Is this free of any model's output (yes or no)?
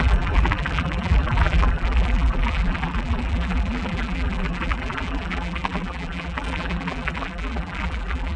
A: no